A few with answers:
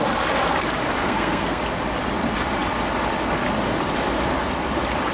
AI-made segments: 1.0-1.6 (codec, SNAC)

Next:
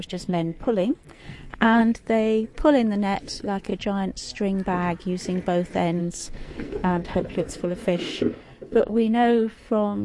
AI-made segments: 0.0-1.8 (codec, SNAC); 3.2-3.7; 6.0-10.0

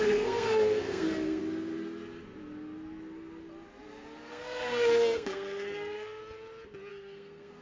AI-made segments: 0.0-1.4 (codec, SNAC); 4.3-6.2; 6.9-7.6

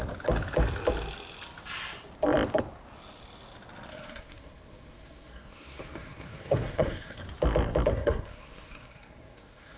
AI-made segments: 3.9-7.2 (codec, SNAC); 7.9-9.8

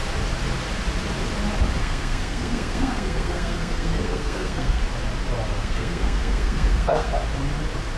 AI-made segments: 1.8-4.8 (codec, SNAC); 5.6-7.1